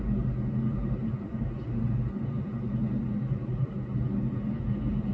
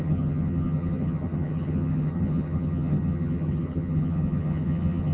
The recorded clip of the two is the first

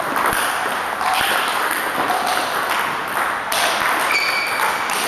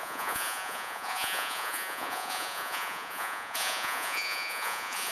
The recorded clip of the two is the first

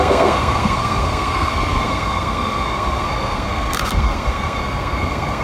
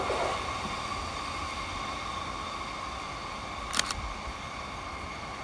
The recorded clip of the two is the second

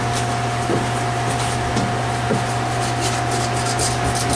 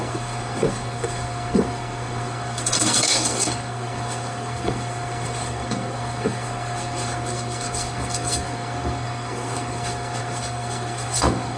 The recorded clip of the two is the first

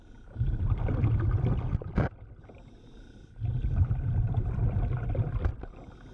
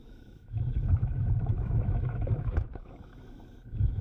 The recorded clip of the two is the first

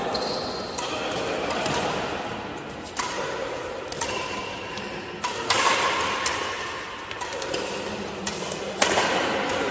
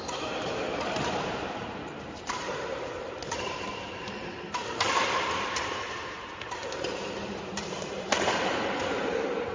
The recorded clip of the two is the first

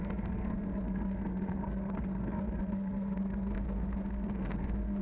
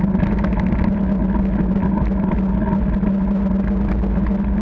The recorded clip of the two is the second